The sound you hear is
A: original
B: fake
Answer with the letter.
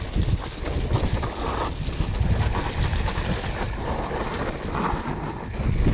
A